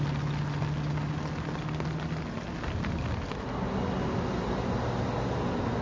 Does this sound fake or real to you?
real